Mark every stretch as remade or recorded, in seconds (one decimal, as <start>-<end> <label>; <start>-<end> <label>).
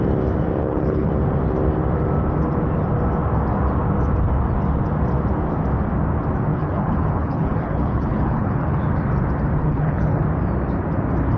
0.0-0.6 recorded; 0.6-1.1 remade; 1.1-6.5 recorded; 6.5-8.8 remade; 8.8-9.6 recorded; 9.6-10.2 remade; 10.2-11.4 recorded